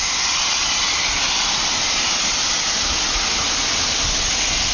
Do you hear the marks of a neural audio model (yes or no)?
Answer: no